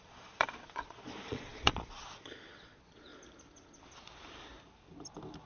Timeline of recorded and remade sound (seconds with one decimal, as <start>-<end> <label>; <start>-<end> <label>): 0.0-3.1 remade; 3.1-5.5 recorded